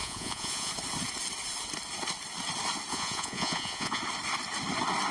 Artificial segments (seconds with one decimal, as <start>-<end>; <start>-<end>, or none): 0.0-0.7; 2.9-4.0